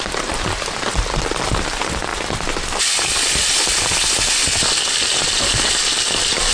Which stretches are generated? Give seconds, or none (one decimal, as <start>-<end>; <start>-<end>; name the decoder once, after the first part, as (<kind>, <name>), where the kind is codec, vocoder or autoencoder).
none